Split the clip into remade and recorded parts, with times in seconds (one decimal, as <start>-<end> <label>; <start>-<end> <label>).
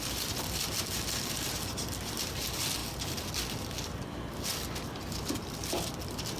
0.0-6.4 recorded